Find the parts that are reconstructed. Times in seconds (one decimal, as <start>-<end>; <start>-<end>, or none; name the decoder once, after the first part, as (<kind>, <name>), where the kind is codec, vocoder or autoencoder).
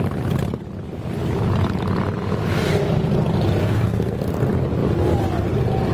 3.6-4.2 (codec, SNAC)